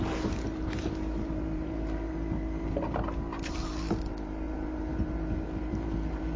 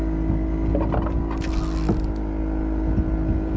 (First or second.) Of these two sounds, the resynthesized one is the first